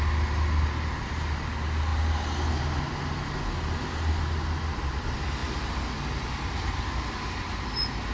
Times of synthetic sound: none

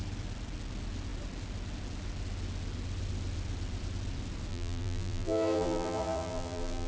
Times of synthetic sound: 4.5-6.9 (vocoder, BigVGAN v2)

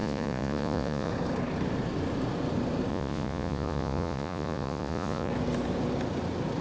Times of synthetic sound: 0.0-1.1 (vocoder, Vocos); 2.9-5.3